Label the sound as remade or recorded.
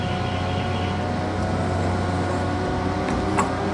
recorded